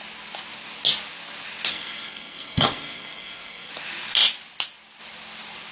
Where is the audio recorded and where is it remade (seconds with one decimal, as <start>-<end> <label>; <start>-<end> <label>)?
0.0-1.7 recorded; 1.7-3.7 remade; 3.7-5.7 recorded